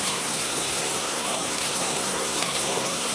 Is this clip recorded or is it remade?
remade